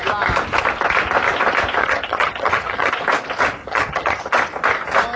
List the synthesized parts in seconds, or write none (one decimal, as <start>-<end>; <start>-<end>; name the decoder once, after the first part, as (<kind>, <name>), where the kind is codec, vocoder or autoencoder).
1.8-2.9 (vocoder, HiFi-GAN); 3.6-4.2